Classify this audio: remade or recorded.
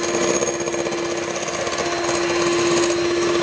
recorded